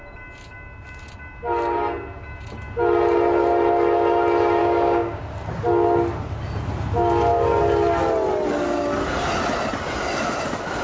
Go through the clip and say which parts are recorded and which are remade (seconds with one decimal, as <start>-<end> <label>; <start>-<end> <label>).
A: 0.0-4.6 recorded; 4.6-5.2 remade; 5.2-10.8 recorded